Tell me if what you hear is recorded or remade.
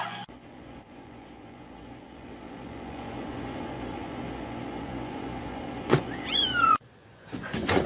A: remade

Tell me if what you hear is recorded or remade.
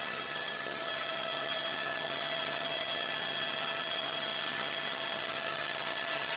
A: remade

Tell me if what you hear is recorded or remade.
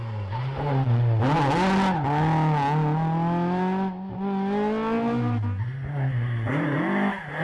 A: recorded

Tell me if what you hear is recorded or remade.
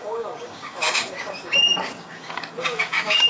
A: remade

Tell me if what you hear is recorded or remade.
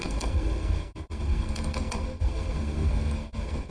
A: remade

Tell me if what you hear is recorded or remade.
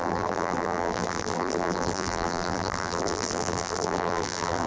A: remade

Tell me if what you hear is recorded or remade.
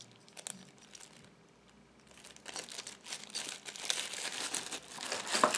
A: recorded